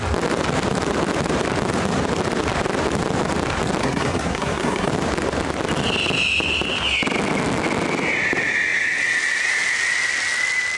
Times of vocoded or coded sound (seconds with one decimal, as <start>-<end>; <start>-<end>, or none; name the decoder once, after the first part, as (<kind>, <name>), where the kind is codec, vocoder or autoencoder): 3.8-4.9 (codec, SNAC)